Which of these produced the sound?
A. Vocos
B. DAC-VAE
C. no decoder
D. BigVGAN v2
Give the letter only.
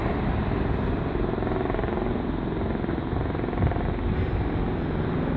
C